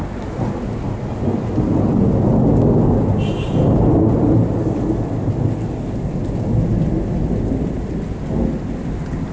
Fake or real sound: real